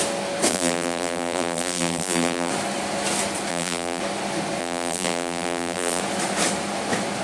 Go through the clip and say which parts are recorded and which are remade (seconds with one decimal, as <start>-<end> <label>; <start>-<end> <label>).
0.0-0.5 recorded; 0.5-2.5 remade; 2.5-3.5 recorded; 3.5-4.0 remade; 4.0-4.6 recorded; 4.6-6.0 remade; 6.0-7.2 recorded